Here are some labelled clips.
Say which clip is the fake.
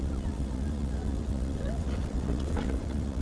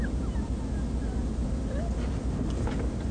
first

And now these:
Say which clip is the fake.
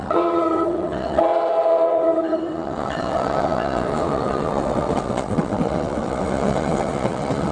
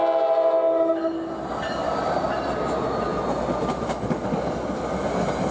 first